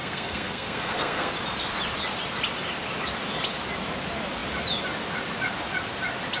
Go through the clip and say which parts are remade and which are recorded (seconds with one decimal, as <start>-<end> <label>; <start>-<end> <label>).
0.0-1.3 remade; 1.3-6.4 recorded